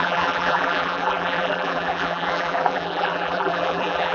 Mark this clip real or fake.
fake